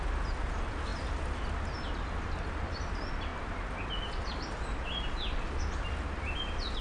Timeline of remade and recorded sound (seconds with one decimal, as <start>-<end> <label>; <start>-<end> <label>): 0.0-6.8 recorded

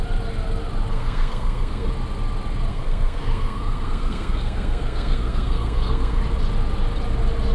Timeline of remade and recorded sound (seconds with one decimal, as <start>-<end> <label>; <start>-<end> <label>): 0.0-0.9 recorded; 0.9-1.9 remade; 1.9-2.7 recorded; 2.7-6.2 remade; 6.2-7.5 recorded